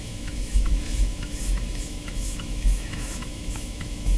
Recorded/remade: remade